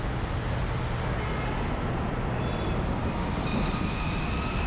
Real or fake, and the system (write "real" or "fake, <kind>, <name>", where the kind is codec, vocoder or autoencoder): real